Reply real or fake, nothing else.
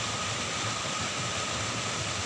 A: real